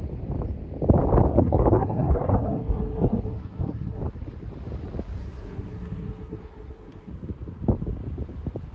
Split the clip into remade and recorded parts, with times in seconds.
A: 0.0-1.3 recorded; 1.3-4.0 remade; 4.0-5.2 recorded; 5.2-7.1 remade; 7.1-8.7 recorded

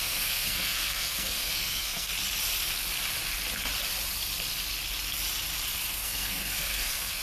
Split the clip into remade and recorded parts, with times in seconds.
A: 0.0-2.1 remade; 2.1-5.9 recorded; 5.9-7.2 remade

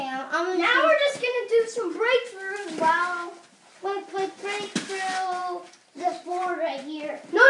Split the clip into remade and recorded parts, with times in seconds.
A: 0.0-7.5 recorded

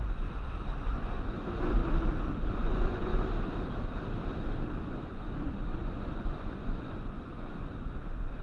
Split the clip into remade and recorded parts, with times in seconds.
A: 0.0-1.8 remade; 1.8-2.5 recorded; 2.5-3.1 remade; 3.1-4.8 recorded; 4.8-8.4 remade